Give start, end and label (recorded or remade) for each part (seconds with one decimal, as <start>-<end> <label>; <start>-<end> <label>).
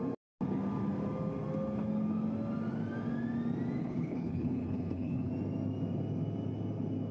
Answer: 0.0-3.8 recorded; 3.8-5.3 remade; 5.3-7.1 recorded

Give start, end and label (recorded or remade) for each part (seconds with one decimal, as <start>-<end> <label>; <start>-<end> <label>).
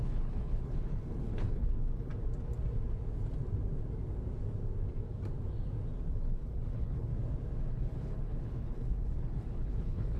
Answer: 0.0-2.1 remade; 2.1-6.1 recorded; 6.1-7.1 remade; 7.1-7.7 recorded; 7.7-10.2 remade